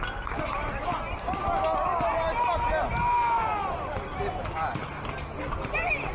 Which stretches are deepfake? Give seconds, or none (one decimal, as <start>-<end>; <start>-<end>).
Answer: none